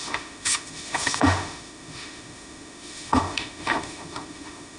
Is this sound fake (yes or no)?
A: yes